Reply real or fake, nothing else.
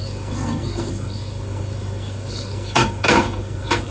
fake